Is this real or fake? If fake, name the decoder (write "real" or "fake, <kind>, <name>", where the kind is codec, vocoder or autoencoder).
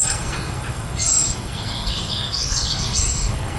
fake, codec, SNAC